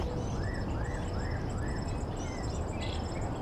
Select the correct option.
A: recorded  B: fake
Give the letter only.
A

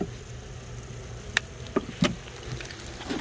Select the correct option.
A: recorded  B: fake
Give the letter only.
A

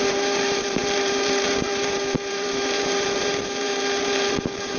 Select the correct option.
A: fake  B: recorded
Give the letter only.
A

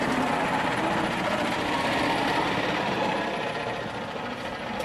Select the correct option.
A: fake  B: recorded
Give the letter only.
B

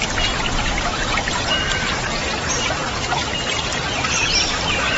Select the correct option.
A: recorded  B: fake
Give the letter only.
B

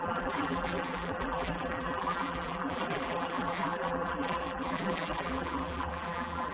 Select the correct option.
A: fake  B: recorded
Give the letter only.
A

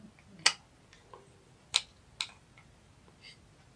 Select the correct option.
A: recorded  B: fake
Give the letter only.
A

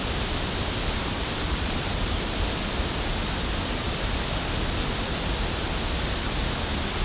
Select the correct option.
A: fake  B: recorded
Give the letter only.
B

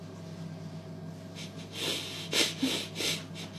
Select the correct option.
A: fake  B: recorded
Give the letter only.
B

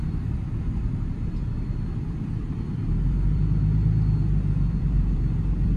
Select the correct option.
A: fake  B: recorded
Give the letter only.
A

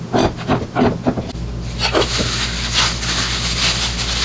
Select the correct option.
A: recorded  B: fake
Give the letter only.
A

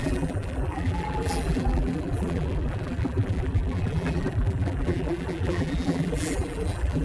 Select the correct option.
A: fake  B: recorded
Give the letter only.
A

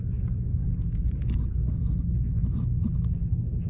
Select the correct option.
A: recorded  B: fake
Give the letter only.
A